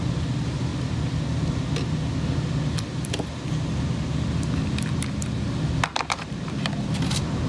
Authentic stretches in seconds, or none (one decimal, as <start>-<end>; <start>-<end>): 0.0-7.5